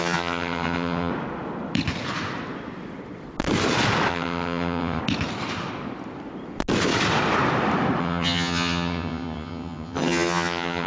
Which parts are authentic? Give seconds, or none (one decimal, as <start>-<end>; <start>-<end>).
1.1-4.1; 5.0-8.0